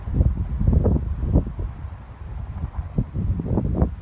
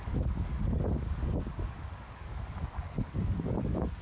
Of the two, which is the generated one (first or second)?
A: second